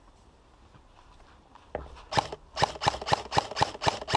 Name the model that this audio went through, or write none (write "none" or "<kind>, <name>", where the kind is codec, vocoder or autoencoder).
none